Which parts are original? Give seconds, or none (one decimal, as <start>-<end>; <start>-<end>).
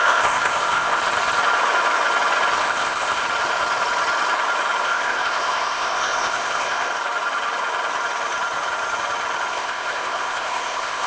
1.0-2.6; 3.2-4.8; 6.9-9.5